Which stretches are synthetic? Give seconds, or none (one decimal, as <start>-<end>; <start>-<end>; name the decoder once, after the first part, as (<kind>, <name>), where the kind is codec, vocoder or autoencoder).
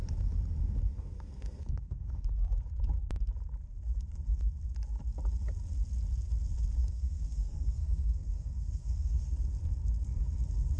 0.9-2.2 (codec, SNAC); 6.8-9.1